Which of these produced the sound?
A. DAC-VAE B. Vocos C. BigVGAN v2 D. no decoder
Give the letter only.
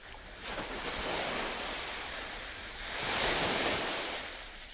C